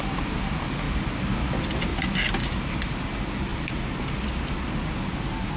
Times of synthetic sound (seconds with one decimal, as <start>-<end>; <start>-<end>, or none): none